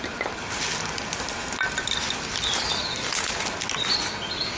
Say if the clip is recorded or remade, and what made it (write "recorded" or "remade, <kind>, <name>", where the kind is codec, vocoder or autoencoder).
recorded